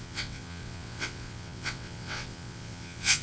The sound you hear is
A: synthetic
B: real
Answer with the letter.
A